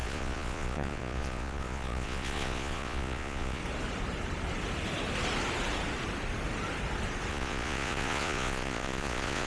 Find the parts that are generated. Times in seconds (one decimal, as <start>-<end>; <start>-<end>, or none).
0.0-3.6; 7.3-9.5